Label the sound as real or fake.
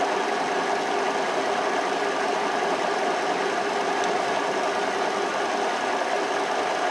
real